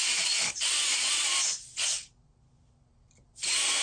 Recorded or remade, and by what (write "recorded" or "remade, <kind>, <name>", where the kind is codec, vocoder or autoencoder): recorded